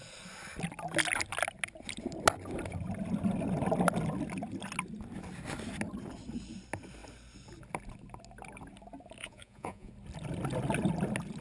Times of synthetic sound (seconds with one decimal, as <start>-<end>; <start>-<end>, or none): 9.2-9.9